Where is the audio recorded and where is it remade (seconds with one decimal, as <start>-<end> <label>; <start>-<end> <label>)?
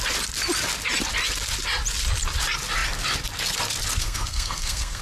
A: 0.0-4.0 recorded; 4.0-5.0 remade